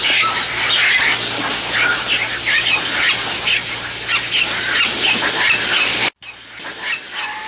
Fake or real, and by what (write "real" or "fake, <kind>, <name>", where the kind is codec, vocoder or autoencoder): real